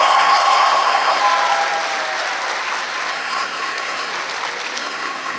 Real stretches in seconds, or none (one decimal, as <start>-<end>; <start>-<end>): 1.2-3.1; 4.1-4.8